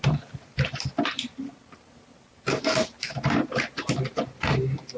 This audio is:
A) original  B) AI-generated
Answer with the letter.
A